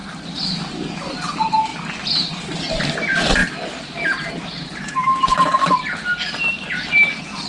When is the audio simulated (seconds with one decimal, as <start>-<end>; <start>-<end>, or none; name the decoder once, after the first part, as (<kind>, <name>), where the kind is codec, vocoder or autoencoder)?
0.0-1.7 (vocoder, BigVGAN v2); 2.7-7.5